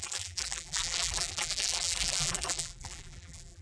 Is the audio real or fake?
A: fake